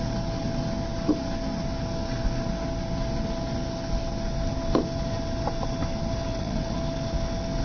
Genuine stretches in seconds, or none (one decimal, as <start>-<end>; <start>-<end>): 0.0-6.3; 6.8-7.6